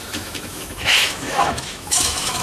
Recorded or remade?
remade